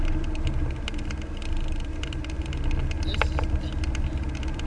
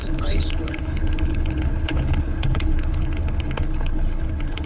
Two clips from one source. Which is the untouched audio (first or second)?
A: first